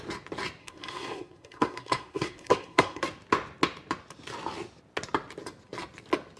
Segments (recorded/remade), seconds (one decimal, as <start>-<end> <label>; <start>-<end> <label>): 0.0-0.6 recorded; 0.6-3.0 remade; 3.0-6.4 recorded